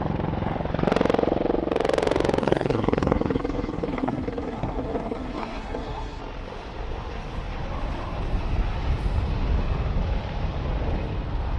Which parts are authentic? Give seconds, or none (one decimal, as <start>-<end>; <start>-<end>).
0.0-2.4; 6.2-11.6